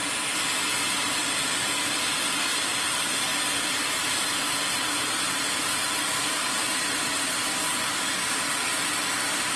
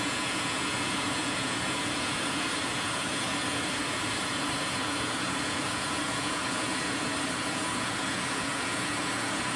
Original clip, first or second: first